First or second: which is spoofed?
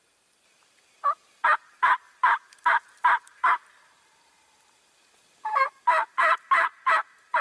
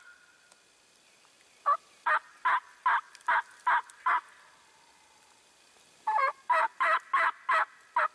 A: first